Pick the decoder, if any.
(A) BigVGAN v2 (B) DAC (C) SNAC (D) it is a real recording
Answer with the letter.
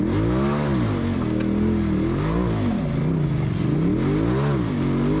D